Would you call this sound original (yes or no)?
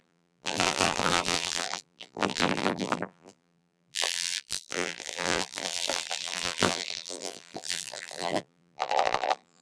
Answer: no